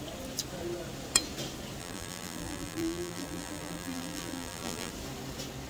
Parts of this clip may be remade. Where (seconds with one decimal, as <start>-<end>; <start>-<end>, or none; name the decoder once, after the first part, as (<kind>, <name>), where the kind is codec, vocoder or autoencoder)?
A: 1.8-4.9 (vocoder, BigVGAN v2)